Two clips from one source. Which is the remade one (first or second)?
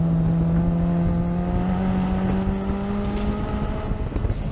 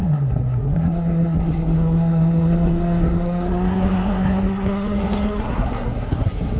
second